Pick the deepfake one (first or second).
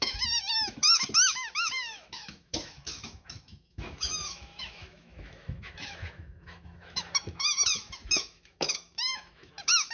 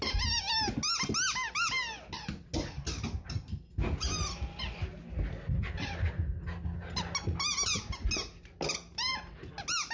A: first